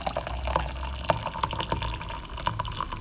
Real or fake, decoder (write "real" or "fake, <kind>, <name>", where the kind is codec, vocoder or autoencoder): real